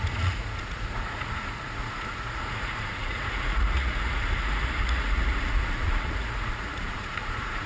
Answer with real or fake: fake